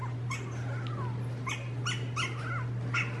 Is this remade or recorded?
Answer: recorded